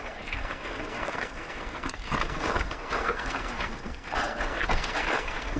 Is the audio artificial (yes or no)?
yes